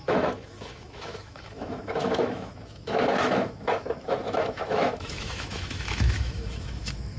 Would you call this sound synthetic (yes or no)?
yes